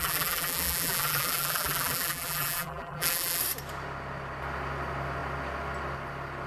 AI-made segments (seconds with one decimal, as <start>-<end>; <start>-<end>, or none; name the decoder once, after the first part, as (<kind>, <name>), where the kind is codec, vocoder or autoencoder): 0.0-3.4 (vocoder, BigVGAN v2)